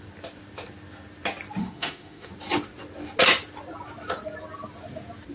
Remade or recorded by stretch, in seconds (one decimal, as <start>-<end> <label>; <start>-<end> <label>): 0.0-1.6 recorded; 1.6-2.3 remade; 2.3-5.3 recorded